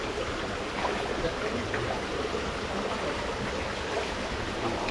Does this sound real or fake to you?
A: real